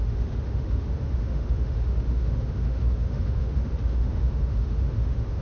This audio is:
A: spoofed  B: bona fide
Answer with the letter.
A